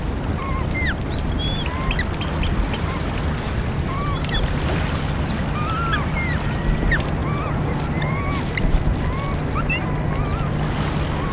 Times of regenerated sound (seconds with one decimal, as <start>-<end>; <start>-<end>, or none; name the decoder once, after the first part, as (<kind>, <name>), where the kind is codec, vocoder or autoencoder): none